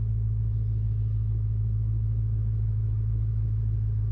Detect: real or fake fake